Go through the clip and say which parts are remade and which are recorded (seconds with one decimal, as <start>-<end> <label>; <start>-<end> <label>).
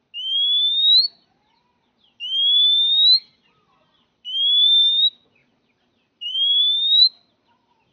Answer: 0.0-5.4 recorded; 5.4-6.6 remade; 6.6-7.9 recorded